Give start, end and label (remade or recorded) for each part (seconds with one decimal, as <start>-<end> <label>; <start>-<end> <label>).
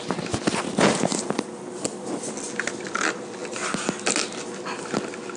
0.0-5.4 recorded